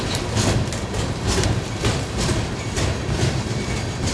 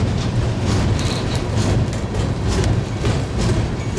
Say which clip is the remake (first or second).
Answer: first